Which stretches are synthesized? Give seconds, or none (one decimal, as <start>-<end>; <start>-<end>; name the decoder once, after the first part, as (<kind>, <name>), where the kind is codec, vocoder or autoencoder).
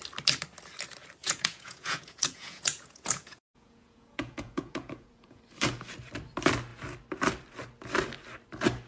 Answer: 1.2-5.4 (vocoder, Vocos)